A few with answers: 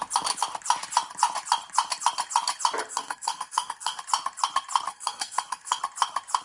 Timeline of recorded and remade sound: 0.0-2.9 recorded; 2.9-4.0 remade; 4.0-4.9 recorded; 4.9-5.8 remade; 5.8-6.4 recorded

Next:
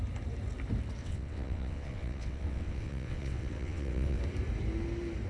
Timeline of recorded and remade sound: 0.0-1.0 recorded; 1.0-4.2 remade; 4.2-5.3 recorded

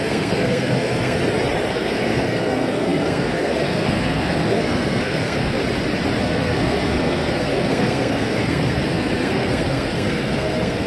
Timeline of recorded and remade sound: 0.0-1.2 remade; 1.2-1.7 recorded; 1.7-5.6 remade; 5.6-6.2 recorded; 6.2-10.9 remade

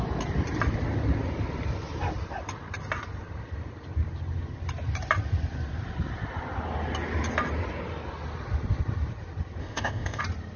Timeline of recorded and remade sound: 0.0-9.6 recorded; 9.6-10.2 remade; 10.2-10.6 recorded